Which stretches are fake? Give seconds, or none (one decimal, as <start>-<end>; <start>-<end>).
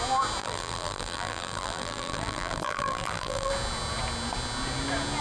0.4-3.5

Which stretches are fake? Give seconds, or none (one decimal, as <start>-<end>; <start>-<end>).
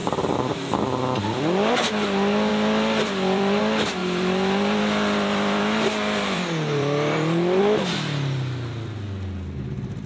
0.0-1.7; 2.5-3.6; 4.0-7.6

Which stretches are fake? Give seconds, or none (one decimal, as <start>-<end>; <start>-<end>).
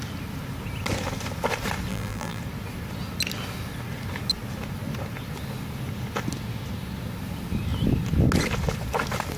1.9-2.4